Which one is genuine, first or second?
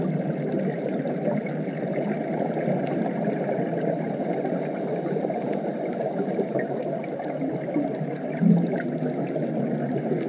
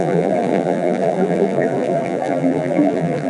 first